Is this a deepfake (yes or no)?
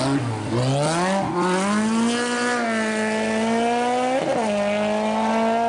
no